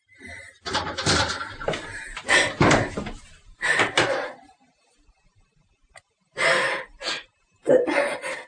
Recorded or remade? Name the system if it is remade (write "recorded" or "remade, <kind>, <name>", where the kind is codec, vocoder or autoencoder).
remade, vocoder, BigVGAN v2